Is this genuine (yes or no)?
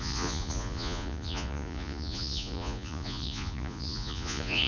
no